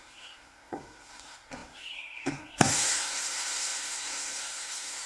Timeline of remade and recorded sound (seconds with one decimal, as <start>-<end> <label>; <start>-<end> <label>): 0.0-5.1 remade